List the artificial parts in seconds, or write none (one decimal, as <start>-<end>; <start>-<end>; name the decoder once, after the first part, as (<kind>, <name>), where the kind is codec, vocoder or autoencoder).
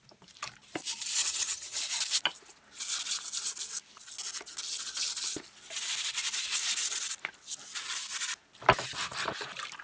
1.2-1.8 (vocoder, HiFi-GAN)